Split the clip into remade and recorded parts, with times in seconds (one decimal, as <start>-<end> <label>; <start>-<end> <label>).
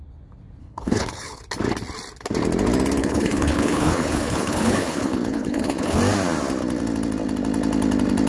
0.0-0.6 recorded; 0.6-1.4 remade; 1.4-3.0 recorded; 3.0-6.0 remade; 6.0-8.3 recorded